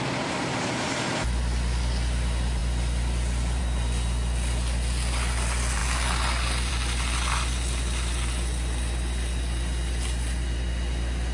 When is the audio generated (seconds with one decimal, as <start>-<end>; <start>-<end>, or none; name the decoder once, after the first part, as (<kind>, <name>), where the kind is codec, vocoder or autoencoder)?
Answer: none